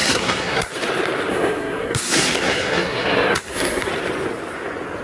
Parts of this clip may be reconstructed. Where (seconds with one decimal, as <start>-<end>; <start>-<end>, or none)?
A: 0.0-0.7; 1.3-3.9